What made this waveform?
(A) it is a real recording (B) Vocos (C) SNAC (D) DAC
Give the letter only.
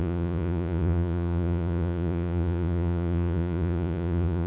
B